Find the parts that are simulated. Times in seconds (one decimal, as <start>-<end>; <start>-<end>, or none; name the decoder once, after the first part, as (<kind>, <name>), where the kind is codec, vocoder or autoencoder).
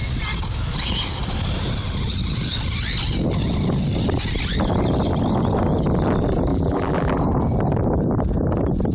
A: 6.5-7.2 (vocoder, BigVGAN v2)